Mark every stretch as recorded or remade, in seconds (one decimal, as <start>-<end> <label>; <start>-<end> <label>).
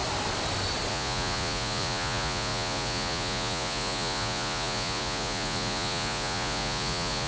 0.0-0.9 recorded; 0.9-7.3 remade